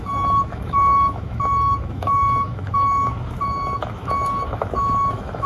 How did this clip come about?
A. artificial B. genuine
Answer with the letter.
A